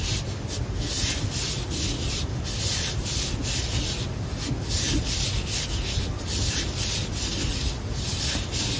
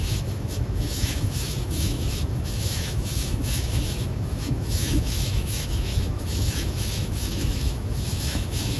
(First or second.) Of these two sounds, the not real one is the second